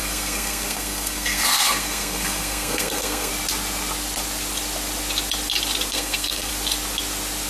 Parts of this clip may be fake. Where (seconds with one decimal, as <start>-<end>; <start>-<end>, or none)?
0.0-3.3; 5.9-6.5